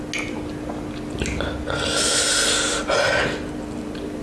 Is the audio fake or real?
real